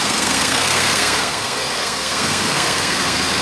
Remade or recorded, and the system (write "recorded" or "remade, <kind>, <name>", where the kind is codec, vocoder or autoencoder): remade, codec, SNAC